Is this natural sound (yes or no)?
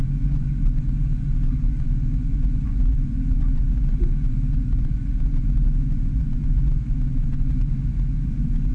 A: no